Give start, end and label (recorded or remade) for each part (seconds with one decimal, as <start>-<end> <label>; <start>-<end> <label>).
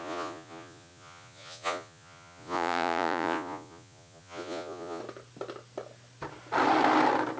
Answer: 0.0-5.0 remade; 5.0-7.4 recorded